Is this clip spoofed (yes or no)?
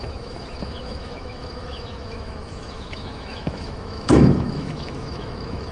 yes